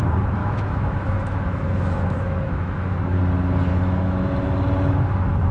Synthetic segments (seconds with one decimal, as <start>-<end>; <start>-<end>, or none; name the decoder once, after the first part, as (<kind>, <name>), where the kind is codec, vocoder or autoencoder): 0.4-3.2 (autoencoder, DAC-VAE); 3.7-4.3